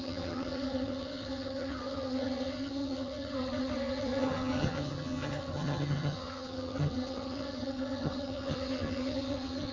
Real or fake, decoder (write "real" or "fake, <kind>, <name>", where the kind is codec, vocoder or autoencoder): fake, vocoder, HiFi-GAN